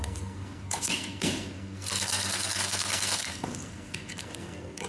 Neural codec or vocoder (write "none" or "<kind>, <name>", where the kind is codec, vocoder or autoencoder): codec, SNAC